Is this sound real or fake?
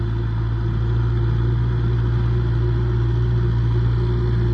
real